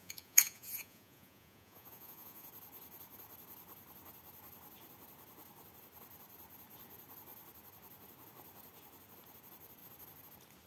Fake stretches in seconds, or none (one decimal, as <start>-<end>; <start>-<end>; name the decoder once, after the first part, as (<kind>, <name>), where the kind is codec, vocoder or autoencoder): 0.0-2.5 (vocoder, Vocos)